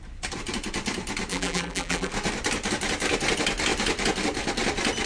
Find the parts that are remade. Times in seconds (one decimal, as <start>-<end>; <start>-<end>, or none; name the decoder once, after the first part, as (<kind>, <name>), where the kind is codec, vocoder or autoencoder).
1.3-2.1 (vocoder, BigVGAN v2)